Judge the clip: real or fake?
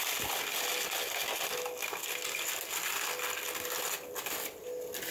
real